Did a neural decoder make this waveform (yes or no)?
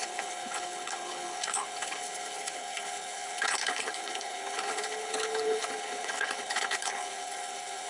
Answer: yes